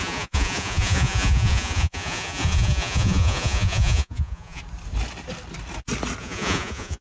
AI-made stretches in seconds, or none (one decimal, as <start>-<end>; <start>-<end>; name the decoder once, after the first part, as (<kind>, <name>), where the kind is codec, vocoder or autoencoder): 0.0-4.6 (vocoder, Vocos); 6.2-7.0